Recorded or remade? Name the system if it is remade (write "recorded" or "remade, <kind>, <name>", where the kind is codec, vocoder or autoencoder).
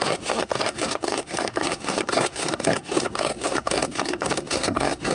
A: remade, codec, SNAC